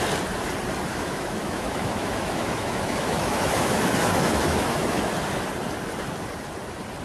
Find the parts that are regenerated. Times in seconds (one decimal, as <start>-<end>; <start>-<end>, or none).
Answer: 0.9-5.1